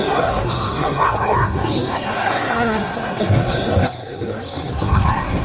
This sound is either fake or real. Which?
fake